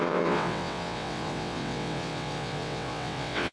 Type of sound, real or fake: fake